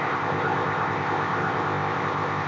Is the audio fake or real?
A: fake